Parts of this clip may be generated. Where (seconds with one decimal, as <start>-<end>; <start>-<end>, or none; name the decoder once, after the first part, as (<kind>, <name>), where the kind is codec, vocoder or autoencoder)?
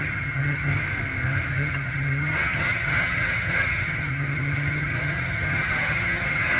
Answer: 0.0-0.7 (vocoder, HiFi-GAN); 1.5-6.6